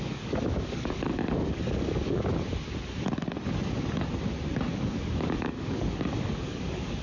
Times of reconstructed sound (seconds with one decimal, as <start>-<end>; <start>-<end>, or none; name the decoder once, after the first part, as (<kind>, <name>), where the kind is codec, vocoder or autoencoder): 0.0-2.3 (codec, DAC); 4.7-7.0